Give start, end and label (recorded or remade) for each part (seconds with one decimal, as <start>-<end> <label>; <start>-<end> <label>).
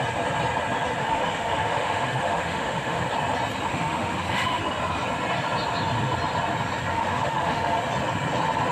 0.0-1.0 recorded; 1.0-3.0 remade; 3.0-3.7 recorded; 3.7-4.6 remade; 4.6-6.9 recorded; 6.9-7.8 remade; 7.8-8.7 recorded